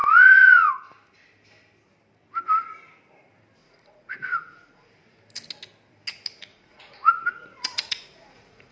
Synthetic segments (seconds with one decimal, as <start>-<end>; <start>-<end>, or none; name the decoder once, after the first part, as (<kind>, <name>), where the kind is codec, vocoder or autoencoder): 0.0-0.7 (vocoder, Vocos); 3.6-4.9; 6.5-8.7